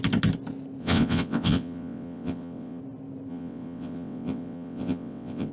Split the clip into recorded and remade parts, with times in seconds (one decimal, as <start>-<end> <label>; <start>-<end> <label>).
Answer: 0.0-0.8 recorded; 0.8-2.8 remade; 2.8-3.3 recorded; 3.3-5.5 remade